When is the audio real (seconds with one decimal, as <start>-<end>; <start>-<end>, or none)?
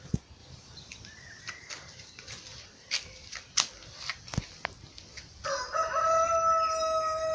0.0-0.4; 1.4-2.5; 4.5-7.3